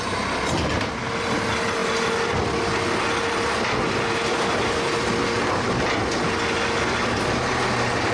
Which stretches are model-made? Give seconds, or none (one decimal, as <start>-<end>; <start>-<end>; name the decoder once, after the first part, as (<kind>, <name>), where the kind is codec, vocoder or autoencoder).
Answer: none